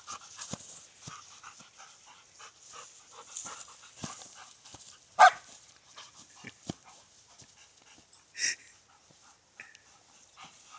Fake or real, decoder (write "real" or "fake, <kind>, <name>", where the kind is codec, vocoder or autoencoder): real